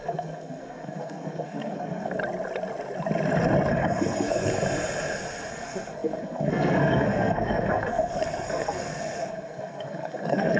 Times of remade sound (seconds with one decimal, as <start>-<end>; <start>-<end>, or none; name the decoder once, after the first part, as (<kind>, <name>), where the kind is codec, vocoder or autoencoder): 0.0-2.2 (codec, SNAC); 3.7-4.5; 5.5-10.6